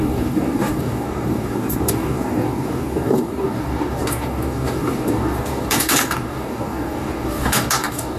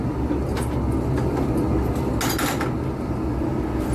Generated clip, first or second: first